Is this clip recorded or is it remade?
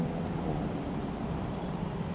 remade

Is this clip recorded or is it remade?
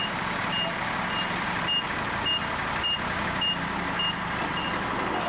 recorded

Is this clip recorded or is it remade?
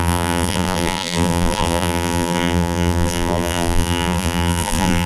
remade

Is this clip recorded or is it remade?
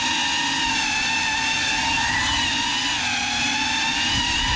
recorded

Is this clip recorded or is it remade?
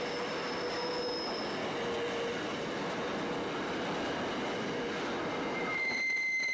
recorded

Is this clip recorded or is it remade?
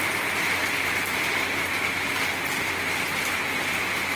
recorded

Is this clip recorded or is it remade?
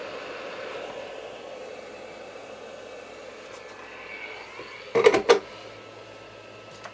recorded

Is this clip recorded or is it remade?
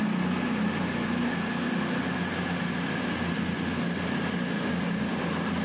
recorded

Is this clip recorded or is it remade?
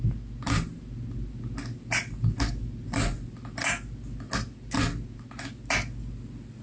recorded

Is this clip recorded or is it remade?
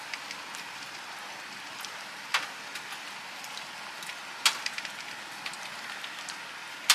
recorded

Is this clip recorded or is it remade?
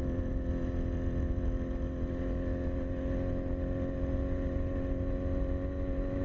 recorded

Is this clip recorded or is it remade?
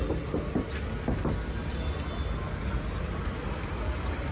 recorded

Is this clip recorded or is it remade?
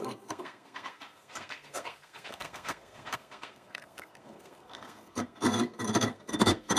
remade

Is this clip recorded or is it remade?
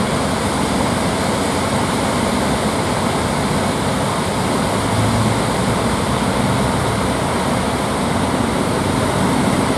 recorded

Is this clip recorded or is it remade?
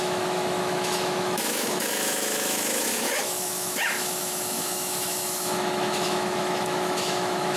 remade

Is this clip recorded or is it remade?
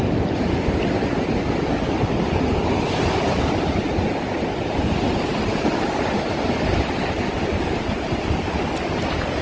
recorded